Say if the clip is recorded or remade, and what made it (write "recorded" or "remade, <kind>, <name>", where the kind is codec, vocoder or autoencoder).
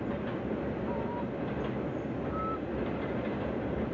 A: recorded